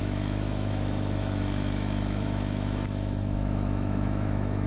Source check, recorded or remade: remade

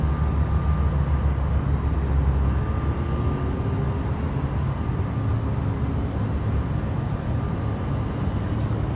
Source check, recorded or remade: recorded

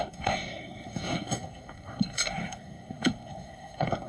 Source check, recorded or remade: remade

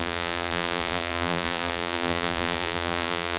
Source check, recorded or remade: remade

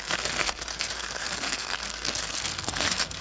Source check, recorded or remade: remade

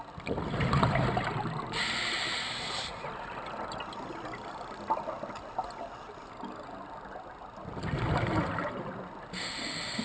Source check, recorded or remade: recorded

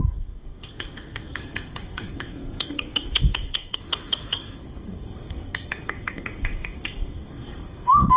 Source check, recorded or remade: remade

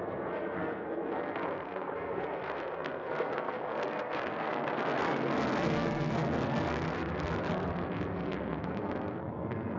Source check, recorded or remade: remade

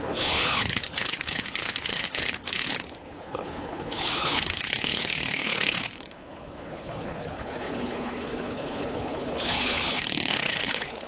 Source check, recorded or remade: remade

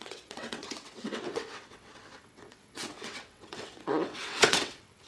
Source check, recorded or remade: remade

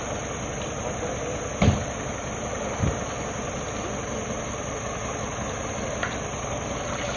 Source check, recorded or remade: recorded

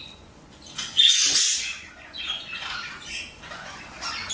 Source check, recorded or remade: remade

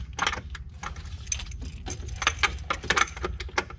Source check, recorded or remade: recorded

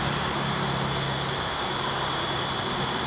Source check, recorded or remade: recorded